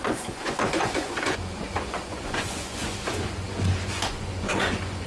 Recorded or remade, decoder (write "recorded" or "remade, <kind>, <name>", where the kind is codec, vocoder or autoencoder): remade, vocoder, Vocos